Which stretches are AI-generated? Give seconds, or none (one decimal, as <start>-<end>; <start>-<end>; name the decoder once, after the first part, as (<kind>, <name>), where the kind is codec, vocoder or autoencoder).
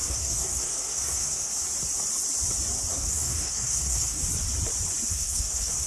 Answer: 0.0-1.5 (codec, SNAC); 2.9-4.2; 5.1-5.9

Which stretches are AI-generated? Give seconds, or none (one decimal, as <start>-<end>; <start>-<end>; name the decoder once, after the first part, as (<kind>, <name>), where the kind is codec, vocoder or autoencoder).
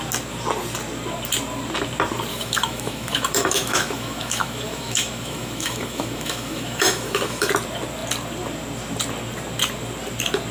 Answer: 2.3-7.5 (autoencoder, DAC-VAE)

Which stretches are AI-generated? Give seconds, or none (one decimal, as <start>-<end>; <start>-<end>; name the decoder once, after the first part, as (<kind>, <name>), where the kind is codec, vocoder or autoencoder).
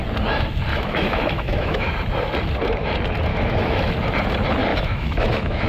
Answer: 0.7-1.9 (autoencoder, DAC-VAE); 3.3-3.9; 4.7-5.7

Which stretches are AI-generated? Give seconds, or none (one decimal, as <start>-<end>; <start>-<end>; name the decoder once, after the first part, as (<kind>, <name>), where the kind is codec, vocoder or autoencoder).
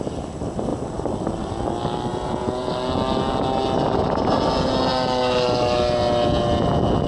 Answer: 2.1-2.7 (vocoder, Vocos)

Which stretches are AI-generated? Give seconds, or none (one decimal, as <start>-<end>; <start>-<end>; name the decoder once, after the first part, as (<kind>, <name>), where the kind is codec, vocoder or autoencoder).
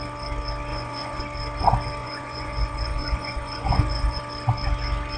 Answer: 0.7-1.2 (vocoder, Vocos); 2.0-4.2